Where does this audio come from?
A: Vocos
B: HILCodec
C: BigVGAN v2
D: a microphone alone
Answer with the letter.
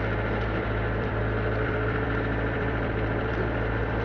C